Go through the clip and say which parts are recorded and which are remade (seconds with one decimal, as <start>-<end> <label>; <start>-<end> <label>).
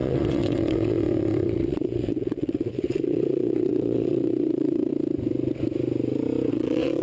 0.0-4.9 remade; 4.9-6.5 recorded; 6.5-7.0 remade